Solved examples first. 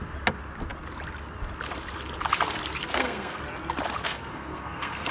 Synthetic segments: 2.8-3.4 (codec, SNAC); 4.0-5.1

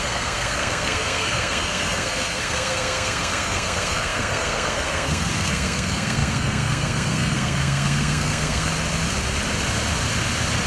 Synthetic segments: 0.0-8.7 (codec, SNAC)

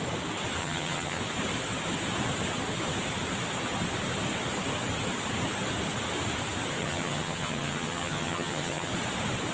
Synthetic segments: 0.6-1.2 (vocoder, HiFi-GAN); 6.8-8.9

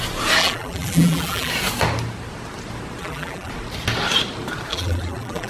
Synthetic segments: 0.4-1.5 (vocoder, BigVGAN v2); 3.0-3.5; 4.7-5.5

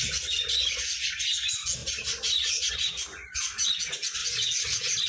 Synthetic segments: none

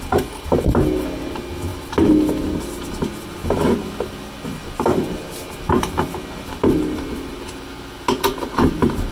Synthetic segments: none